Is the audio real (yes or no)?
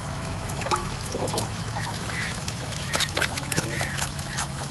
no